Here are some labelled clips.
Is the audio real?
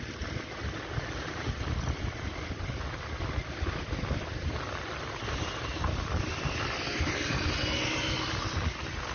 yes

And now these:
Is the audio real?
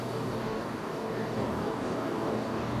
no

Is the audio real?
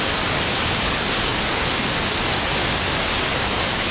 no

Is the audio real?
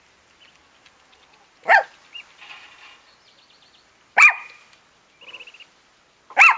yes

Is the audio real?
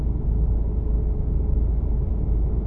yes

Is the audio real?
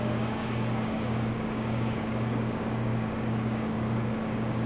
no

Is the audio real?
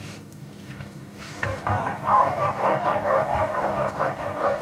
no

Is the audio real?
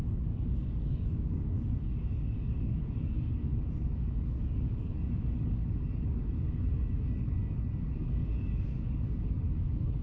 no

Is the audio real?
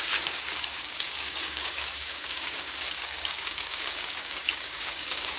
no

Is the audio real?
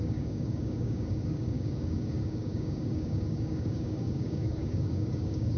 no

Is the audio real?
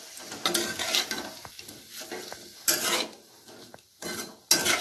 yes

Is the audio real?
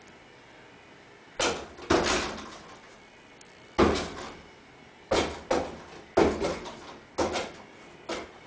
yes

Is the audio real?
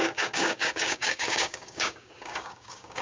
no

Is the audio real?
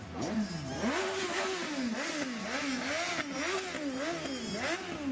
yes